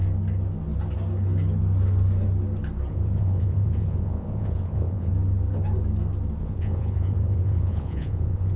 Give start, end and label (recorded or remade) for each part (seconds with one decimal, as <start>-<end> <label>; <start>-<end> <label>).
0.0-2.9 recorded; 2.9-5.1 remade; 5.1-6.4 recorded; 6.4-8.6 remade